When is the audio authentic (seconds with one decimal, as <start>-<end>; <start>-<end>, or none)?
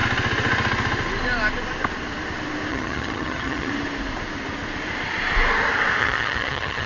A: 0.0-2.7; 3.7-6.0